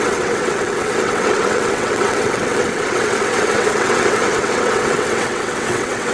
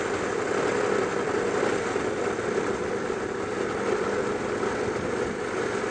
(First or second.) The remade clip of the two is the first